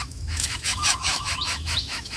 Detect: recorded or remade remade